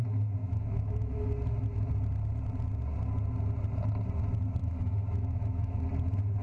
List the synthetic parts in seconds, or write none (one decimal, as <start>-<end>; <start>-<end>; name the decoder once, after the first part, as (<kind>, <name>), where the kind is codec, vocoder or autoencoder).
0.4-1.3 (autoencoder, DAC-VAE); 4.6-5.8